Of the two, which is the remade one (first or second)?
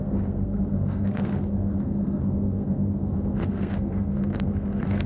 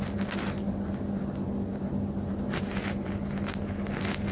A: first